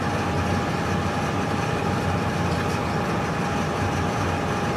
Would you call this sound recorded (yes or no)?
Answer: yes